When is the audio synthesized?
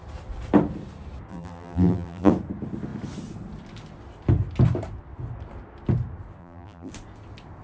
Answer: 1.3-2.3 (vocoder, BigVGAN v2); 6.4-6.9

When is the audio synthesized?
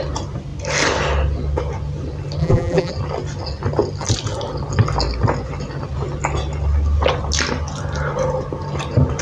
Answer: 2.4-2.9 (vocoder, BigVGAN v2)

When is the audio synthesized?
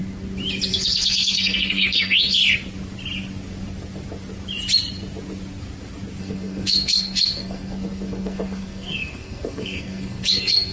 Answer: 0.7-2.4 (codec, SNAC); 6.2-10.7